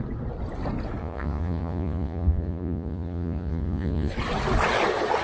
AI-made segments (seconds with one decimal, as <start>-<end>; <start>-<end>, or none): 1.0-4.1